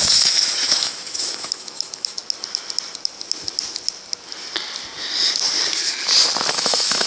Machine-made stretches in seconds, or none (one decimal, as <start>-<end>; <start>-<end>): 0.0-2.2; 6.5-7.1